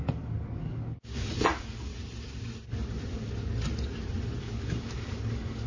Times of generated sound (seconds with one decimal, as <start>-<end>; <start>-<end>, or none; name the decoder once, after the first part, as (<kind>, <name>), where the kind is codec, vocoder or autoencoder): 0.0-1.9 (codec, DAC); 4.4-5.7

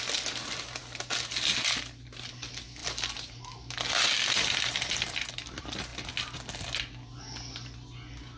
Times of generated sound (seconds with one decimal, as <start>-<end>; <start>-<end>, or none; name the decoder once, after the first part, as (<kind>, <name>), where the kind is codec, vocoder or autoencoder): 2.8-3.7 (vocoder, BigVGAN v2)

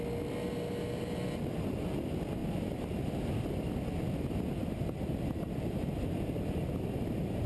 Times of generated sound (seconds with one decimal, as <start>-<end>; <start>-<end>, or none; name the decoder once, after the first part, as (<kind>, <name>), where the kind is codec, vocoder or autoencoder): none

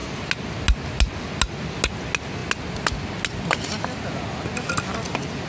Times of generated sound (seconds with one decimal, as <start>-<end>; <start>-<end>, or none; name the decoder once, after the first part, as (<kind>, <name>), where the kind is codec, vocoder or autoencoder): none

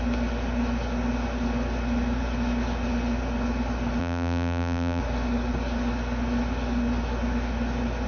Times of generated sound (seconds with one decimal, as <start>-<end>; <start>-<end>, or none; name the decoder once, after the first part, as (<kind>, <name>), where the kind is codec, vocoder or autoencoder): 4.0-5.0 (vocoder, BigVGAN v2)

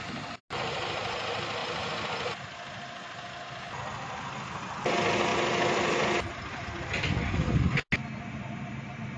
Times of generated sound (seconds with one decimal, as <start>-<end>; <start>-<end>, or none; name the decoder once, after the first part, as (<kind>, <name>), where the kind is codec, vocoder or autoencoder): none

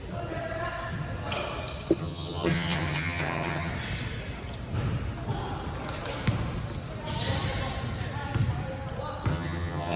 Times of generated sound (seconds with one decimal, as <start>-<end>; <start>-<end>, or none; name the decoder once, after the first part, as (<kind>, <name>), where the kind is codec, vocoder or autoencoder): 2.0-3.7 (vocoder, HiFi-GAN); 9.3-10.0

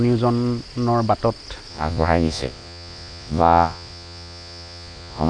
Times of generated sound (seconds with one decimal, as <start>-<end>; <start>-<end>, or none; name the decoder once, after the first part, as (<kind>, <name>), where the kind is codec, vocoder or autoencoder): 1.7-5.3 (vocoder, Vocos)